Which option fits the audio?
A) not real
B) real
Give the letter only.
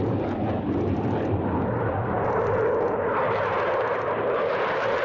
B